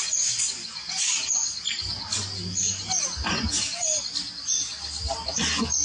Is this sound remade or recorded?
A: recorded